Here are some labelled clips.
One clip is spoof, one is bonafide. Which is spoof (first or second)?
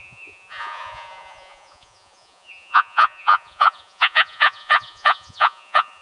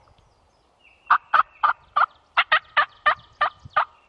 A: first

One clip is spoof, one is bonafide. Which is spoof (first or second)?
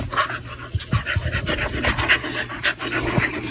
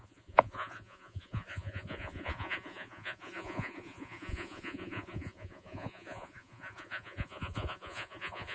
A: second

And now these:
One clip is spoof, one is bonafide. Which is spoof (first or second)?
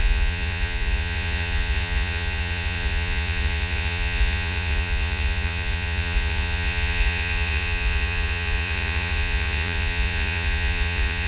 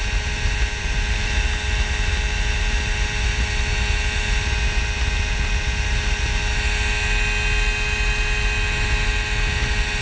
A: first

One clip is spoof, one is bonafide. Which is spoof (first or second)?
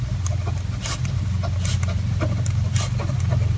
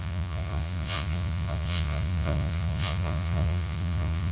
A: second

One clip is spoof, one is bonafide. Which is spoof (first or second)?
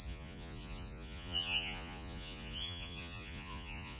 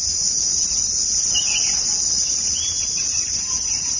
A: first